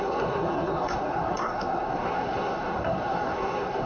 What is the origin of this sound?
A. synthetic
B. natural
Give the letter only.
A